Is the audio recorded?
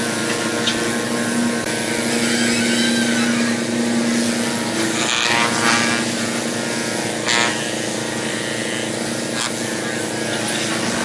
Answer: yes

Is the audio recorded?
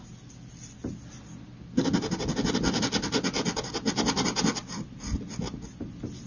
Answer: yes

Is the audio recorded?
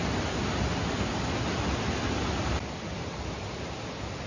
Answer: yes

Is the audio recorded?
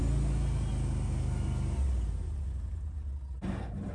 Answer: yes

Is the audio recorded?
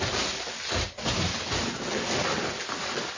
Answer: yes